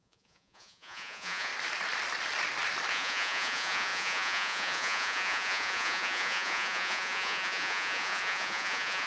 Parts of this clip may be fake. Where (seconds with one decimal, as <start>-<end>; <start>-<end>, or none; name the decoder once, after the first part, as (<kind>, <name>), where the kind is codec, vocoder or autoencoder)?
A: 0.0-1.5 (vocoder, Vocos); 2.9-9.1